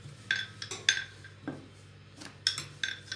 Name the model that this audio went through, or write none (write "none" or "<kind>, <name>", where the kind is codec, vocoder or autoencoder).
none